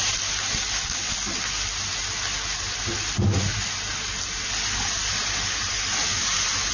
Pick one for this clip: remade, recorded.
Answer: recorded